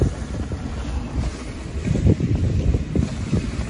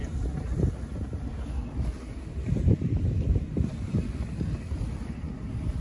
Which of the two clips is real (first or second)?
second